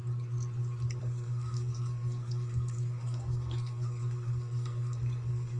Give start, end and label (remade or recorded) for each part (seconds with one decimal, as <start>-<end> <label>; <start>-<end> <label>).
0.0-1.0 recorded; 1.0-5.6 remade